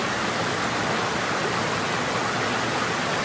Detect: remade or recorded recorded